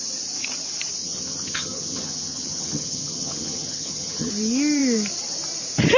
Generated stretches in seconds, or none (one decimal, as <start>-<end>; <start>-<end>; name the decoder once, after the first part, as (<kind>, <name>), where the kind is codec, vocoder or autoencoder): 1.0-4.3 (vocoder, HiFi-GAN)